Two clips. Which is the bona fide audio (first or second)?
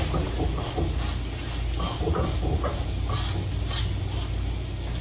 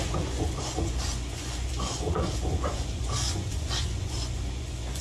first